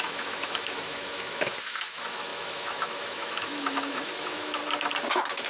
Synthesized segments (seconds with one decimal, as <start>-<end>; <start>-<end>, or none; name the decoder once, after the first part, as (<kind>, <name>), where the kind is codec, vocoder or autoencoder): 0.0-4.6 (autoencoder, DAC-VAE)